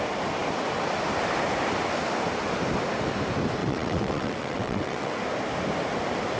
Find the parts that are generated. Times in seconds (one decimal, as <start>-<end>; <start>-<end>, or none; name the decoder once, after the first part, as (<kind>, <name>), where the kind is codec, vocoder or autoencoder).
3.6-5.2 (vocoder, WaveNeXt)